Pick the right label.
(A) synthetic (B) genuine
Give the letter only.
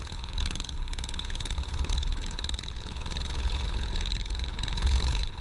A